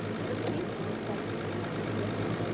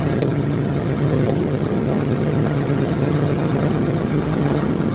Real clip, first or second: first